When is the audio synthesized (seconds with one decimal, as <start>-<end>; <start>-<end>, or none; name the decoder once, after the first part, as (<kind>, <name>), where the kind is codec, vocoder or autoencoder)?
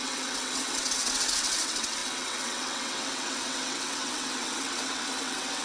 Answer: 0.0-5.6 (vocoder, WaveNeXt)